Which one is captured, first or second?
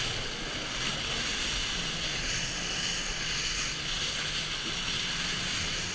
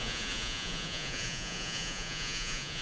first